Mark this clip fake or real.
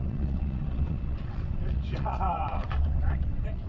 fake